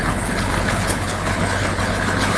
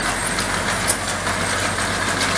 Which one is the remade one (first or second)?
first